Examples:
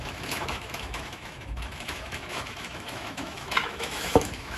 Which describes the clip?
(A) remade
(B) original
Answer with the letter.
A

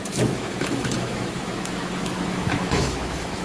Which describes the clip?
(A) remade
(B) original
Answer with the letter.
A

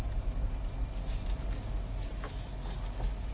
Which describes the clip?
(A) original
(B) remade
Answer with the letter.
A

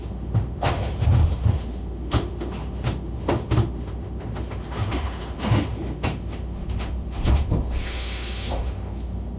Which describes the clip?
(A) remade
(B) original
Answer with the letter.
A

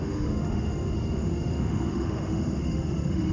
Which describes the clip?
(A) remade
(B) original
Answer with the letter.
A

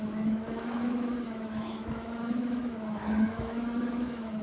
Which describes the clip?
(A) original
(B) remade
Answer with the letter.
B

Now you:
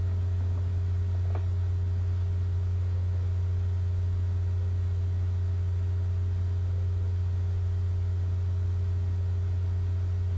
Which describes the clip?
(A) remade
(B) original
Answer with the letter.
B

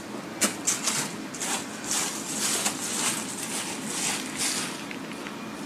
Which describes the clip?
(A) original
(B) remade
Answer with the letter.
A